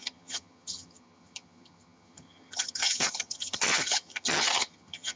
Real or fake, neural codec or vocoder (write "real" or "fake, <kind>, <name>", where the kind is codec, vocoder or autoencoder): fake, vocoder, HiFi-GAN